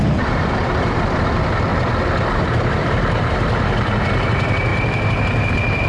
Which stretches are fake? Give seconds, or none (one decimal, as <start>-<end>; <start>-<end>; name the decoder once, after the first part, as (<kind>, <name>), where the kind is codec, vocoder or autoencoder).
0.0-1.7 (vocoder, BigVGAN v2); 2.3-5.9